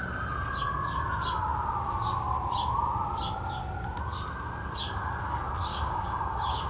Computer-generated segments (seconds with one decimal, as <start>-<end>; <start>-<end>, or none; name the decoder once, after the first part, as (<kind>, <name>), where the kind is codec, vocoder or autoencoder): 5.7-6.7 (codec, DAC)